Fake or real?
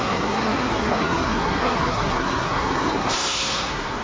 fake